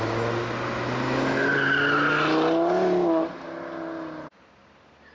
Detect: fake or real real